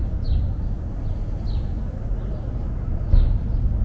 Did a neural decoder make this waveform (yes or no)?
no